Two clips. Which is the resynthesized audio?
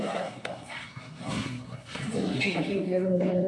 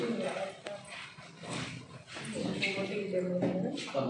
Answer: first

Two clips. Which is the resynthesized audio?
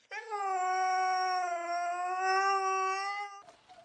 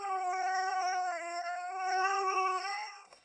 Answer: second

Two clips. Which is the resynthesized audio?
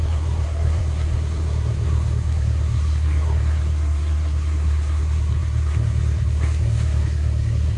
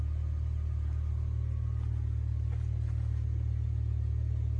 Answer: first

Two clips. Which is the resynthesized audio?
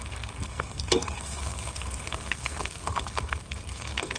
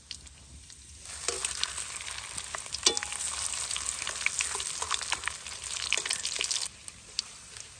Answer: first